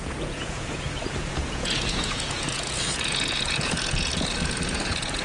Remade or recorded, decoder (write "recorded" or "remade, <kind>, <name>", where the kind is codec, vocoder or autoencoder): remade, vocoder, Vocos